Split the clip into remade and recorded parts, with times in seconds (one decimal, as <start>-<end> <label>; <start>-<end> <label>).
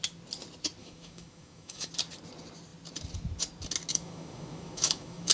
0.0-0.8 recorded; 0.8-1.9 remade; 1.9-3.9 recorded; 3.9-5.3 remade